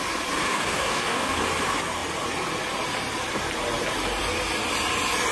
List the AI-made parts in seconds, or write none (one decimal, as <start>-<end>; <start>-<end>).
0.4-1.4